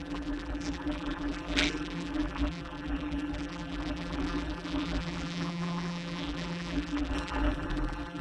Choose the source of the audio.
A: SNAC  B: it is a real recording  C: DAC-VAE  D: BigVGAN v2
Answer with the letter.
D